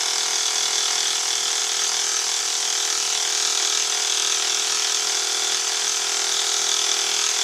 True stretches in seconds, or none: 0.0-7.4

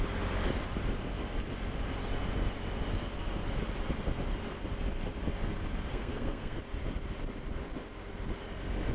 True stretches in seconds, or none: 0.0-5.9; 6.6-8.9

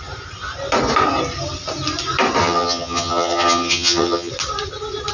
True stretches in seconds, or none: 0.0-2.4; 4.3-5.1